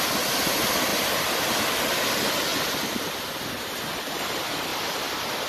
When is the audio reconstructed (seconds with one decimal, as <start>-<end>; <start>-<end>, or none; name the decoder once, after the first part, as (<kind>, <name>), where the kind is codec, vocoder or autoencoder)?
0.9-1.5 (vocoder, BigVGAN v2); 4.7-5.5